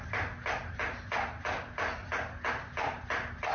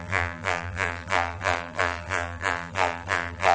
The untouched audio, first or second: first